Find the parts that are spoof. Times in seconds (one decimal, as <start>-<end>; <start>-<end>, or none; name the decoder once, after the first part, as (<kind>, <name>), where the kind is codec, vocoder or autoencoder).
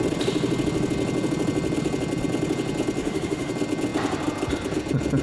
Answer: 3.0-3.5 (autoencoder, DAC-VAE)